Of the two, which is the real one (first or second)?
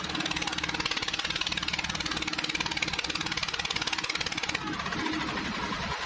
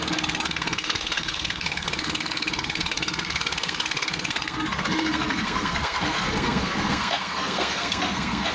first